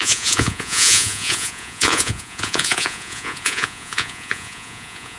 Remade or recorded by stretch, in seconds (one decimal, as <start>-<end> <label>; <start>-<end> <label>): 0.0-5.2 remade